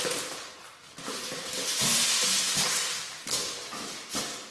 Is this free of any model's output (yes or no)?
yes